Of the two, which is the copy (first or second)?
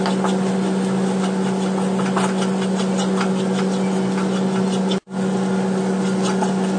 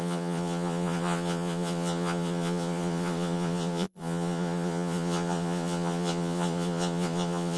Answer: second